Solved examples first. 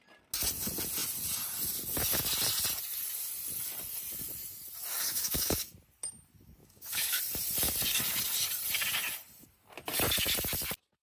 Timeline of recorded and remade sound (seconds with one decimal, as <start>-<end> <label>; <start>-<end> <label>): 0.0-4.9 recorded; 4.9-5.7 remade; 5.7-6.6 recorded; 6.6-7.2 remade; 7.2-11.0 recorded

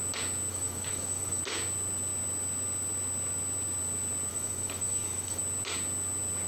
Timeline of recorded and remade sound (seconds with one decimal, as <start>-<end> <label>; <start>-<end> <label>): 0.0-0.5 recorded; 0.5-1.4 remade; 1.4-4.3 recorded; 4.3-5.4 remade; 5.4-6.5 recorded

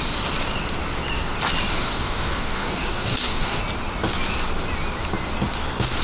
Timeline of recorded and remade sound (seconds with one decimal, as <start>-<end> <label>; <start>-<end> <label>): 0.0-1.7 recorded; 1.7-3.6 remade; 3.6-6.0 recorded

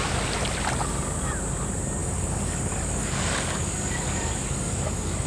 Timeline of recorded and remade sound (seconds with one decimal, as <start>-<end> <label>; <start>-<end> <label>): 0.0-2.0 recorded; 2.0-5.3 remade